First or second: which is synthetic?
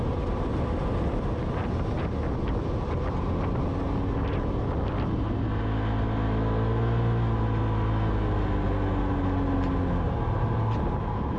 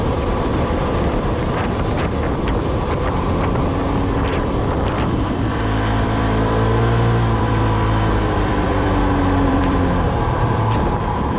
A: second